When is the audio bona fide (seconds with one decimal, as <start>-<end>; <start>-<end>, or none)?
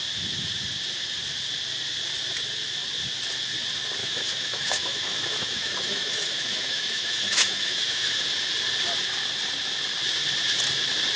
0.0-4.0; 8.2-11.2